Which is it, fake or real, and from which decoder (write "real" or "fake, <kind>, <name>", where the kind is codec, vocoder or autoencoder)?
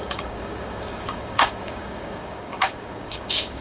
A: fake, codec, DAC